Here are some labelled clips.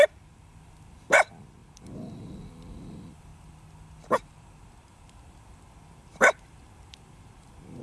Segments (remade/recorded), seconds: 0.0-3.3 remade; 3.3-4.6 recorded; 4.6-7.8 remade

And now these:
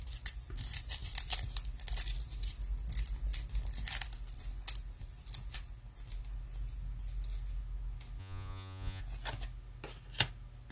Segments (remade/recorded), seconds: 0.0-8.2 recorded; 8.2-9.0 remade; 9.0-10.7 recorded

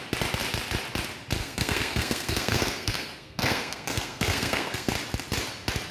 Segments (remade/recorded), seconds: 0.0-1.4 recorded; 1.4-4.9 remade; 4.9-5.9 recorded

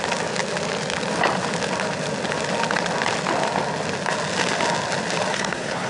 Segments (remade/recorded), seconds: 0.0-5.3 recorded; 5.3-5.9 remade

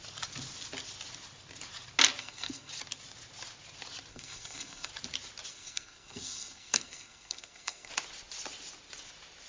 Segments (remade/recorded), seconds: 0.0-2.2 recorded; 2.2-2.7 remade; 2.7-4.1 recorded; 4.1-4.9 remade; 4.9-5.5 recorded; 5.5-7.9 remade; 7.9-9.5 recorded

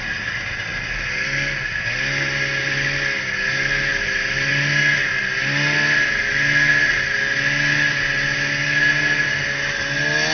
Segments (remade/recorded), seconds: 0.0-3.9 recorded; 3.9-4.5 remade; 4.5-10.3 recorded